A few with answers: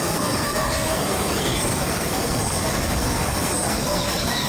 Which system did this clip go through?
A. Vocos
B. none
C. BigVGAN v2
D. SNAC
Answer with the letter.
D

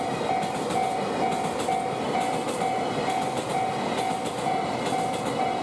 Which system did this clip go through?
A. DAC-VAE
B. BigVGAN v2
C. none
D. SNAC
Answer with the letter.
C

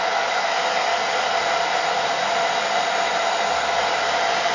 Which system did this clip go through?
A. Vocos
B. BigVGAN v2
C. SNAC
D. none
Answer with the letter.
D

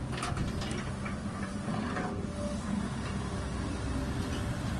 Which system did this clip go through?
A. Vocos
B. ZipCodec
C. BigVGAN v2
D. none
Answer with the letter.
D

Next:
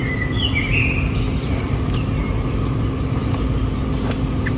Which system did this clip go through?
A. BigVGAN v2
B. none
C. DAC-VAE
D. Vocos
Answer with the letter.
B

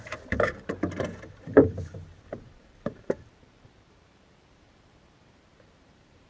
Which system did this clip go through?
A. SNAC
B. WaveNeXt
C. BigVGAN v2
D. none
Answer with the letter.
C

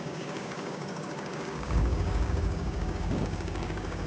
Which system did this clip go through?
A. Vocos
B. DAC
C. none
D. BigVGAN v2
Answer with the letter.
B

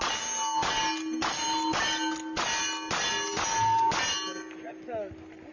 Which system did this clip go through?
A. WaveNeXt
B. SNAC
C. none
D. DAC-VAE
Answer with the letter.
C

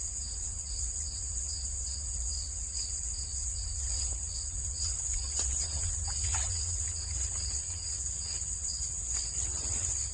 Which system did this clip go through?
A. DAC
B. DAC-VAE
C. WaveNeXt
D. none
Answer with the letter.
C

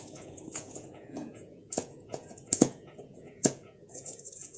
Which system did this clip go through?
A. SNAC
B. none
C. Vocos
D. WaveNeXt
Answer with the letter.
C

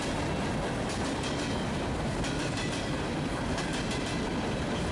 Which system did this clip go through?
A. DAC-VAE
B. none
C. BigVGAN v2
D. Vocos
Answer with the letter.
B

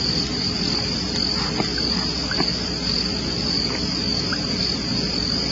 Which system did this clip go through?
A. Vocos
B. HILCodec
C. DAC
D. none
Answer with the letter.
D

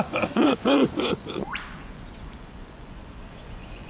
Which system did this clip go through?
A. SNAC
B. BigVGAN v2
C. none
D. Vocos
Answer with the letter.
D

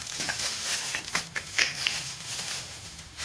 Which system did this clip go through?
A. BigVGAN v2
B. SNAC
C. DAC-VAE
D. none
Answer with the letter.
C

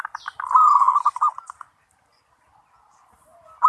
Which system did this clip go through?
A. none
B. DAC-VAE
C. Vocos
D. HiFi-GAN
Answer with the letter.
A